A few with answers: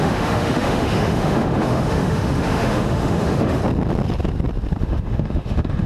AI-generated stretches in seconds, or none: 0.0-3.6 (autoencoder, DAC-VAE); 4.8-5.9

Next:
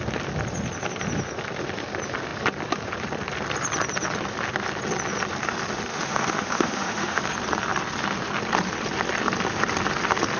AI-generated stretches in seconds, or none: 5.9-7.2 (autoencoder, DAC-VAE)

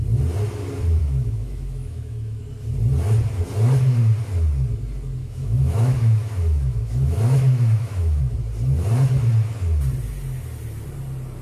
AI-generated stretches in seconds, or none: 1.0-2.4 (autoencoder, DAC-VAE); 5.2-8.2

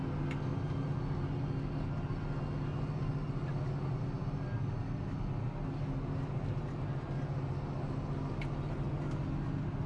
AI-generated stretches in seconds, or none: none

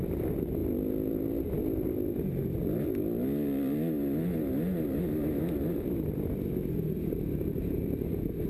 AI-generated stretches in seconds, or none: none

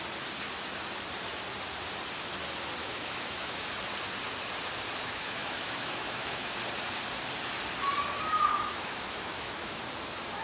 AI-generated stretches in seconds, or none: 2.8-3.7 (autoencoder, DAC-VAE); 5.0-6.5; 8.5-9.8